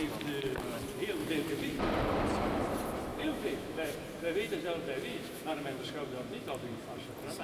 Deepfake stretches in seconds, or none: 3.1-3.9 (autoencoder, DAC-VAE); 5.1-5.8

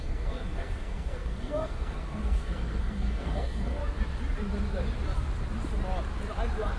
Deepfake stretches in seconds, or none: 0.0-3.8 (codec, SNAC)

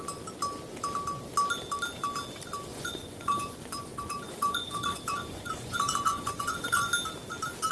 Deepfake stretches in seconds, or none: 2.7-6.9 (vocoder, Vocos)

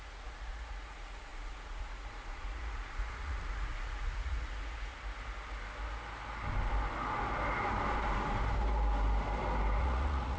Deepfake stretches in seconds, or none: 0.0-4.9 (vocoder, Vocos); 9.8-10.4